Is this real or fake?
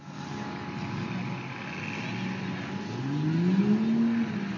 real